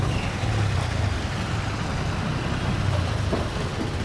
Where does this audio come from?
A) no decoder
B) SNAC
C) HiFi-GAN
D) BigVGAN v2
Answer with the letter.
A